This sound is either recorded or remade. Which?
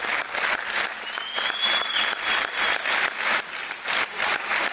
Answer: recorded